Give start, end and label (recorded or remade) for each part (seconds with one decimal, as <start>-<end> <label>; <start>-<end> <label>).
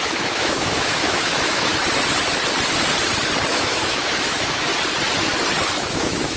0.0-1.7 remade; 1.7-3.5 recorded; 3.5-4.7 remade; 4.7-5.7 recorded; 5.7-6.4 remade